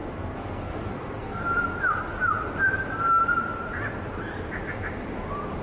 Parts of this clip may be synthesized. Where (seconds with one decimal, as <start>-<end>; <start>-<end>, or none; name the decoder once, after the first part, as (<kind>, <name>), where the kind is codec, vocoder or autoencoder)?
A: 0.0-1.4 (codec, SNAC)